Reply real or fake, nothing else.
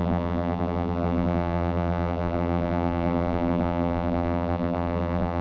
fake